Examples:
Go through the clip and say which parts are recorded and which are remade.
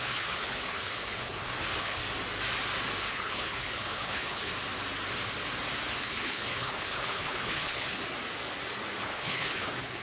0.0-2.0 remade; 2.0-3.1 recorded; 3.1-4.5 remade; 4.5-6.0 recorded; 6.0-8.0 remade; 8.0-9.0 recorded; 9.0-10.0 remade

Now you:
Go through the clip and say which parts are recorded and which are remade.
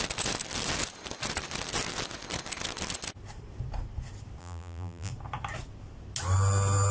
0.0-4.4 recorded; 4.4-5.1 remade; 5.1-6.9 recorded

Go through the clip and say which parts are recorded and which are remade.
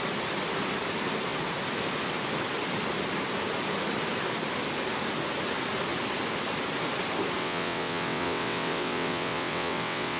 0.0-7.4 recorded; 7.4-10.2 remade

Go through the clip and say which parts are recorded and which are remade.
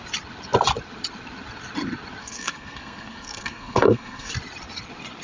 0.0-2.2 recorded; 2.2-4.3 remade; 4.3-5.2 recorded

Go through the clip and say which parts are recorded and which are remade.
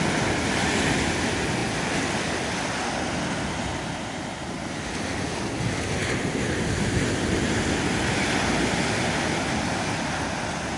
0.0-10.8 recorded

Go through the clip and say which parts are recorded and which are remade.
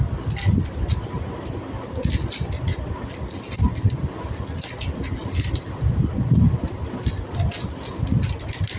0.0-8.8 recorded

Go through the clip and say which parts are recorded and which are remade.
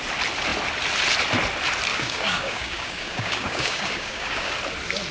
0.0-1.9 recorded; 1.9-4.5 remade; 4.5-5.1 recorded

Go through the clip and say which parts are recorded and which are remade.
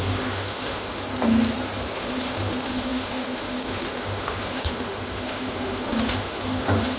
0.0-1.0 remade; 1.0-1.9 recorded; 1.9-7.0 remade